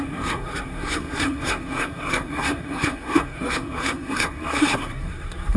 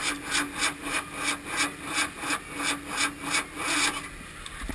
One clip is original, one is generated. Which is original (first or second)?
second